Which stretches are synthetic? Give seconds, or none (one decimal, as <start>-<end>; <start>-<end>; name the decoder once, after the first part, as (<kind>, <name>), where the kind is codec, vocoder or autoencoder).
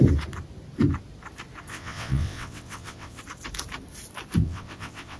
1.7-3.2 (vocoder, WaveNeXt); 4.4-5.2